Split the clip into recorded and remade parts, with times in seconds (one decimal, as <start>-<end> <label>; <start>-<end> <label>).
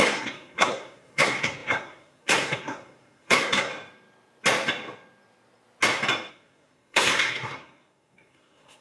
0.0-3.7 remade; 3.7-6.3 recorded; 6.3-8.8 remade